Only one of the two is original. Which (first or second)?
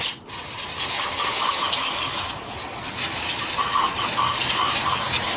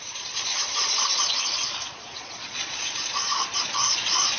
first